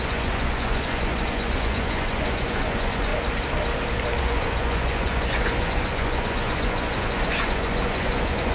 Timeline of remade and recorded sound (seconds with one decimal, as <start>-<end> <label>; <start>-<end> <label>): 0.0-3.1 remade; 3.1-4.2 recorded; 4.2-8.5 remade